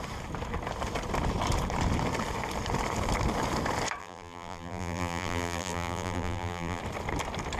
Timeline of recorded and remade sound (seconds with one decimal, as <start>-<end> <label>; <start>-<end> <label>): 0.0-4.0 recorded; 4.0-6.8 remade; 6.8-7.6 recorded